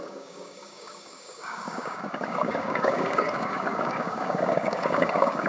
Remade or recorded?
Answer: remade